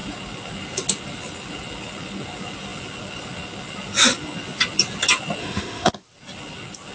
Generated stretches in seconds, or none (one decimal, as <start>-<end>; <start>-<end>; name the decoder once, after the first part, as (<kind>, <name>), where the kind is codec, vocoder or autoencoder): 5.4-5.9 (autoencoder, DAC-VAE)